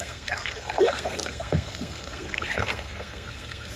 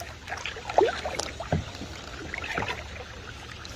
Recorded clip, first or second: second